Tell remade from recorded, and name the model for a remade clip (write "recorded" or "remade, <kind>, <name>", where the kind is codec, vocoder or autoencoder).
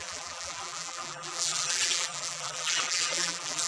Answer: remade, vocoder, BigVGAN v2